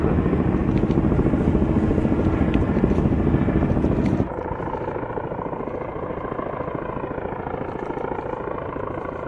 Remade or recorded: recorded